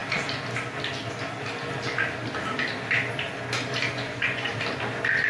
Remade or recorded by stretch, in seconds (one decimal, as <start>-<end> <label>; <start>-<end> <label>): 0.0-3.9 recorded; 3.9-4.5 remade; 4.5-5.3 recorded